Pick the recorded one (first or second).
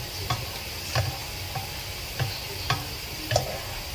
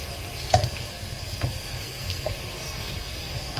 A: first